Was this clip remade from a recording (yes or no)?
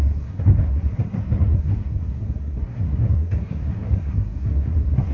yes